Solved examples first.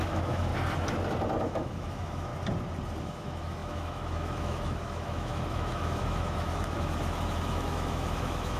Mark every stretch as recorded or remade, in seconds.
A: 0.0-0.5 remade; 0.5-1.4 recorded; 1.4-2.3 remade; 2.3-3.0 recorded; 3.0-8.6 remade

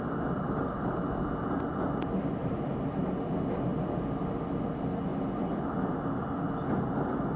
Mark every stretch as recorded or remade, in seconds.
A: 0.0-7.4 recorded

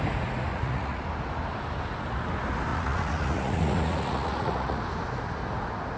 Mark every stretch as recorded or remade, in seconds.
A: 0.0-0.5 recorded; 0.5-1.0 remade; 1.0-2.7 recorded; 2.7-4.8 remade; 4.8-6.0 recorded

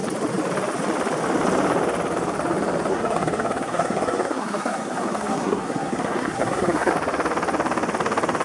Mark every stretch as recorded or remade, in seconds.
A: 0.0-2.9 recorded; 2.9-6.9 remade; 6.9-8.4 recorded